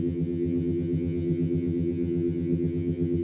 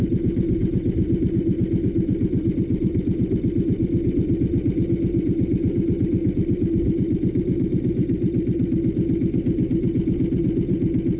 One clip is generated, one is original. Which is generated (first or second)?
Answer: first